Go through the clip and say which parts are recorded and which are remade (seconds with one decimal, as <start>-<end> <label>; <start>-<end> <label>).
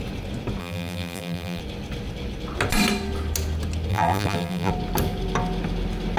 0.0-0.6 recorded; 0.6-1.6 remade; 1.6-3.9 recorded; 3.9-4.7 remade; 4.7-6.2 recorded